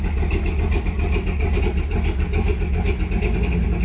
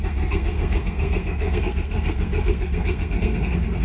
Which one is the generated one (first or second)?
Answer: second